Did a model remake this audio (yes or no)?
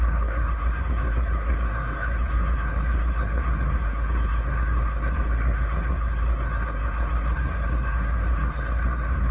yes